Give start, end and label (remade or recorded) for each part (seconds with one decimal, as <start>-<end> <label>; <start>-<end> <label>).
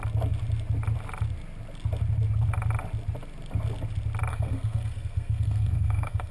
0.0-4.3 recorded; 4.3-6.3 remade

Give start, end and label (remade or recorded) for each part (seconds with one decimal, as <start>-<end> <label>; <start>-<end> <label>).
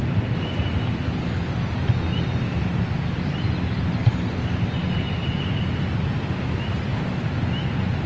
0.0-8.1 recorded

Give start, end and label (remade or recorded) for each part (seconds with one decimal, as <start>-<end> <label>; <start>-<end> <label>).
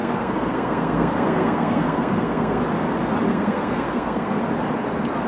0.0-2.6 remade; 2.6-3.3 recorded; 3.3-4.4 remade; 4.4-5.3 recorded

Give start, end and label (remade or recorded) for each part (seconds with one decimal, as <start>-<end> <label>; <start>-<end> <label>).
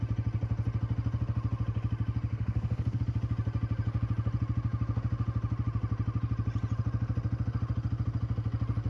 0.0-2.3 recorded; 2.3-3.0 remade; 3.0-8.9 recorded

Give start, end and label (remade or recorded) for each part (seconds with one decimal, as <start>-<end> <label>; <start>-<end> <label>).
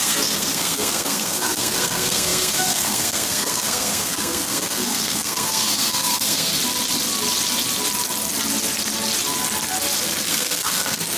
0.0-6.5 remade; 6.5-10.3 recorded; 10.3-11.2 remade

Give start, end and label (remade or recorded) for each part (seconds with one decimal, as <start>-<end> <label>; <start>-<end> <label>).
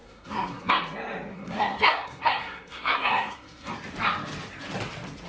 0.0-0.7 remade; 0.7-1.3 recorded; 1.3-3.7 remade; 3.7-5.3 recorded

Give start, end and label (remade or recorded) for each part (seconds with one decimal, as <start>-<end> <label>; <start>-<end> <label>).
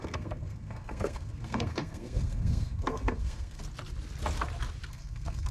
0.0-3.6 remade; 3.6-4.9 recorded; 4.9-5.5 remade